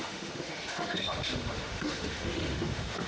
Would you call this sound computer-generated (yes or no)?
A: yes